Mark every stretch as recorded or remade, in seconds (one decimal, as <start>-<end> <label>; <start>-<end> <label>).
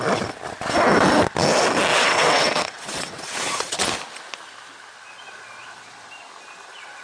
0.0-1.9 recorded; 1.9-3.8 remade; 3.8-7.0 recorded